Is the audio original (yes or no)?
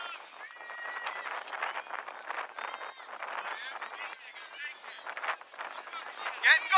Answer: yes